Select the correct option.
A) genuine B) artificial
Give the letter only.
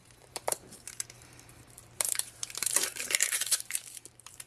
B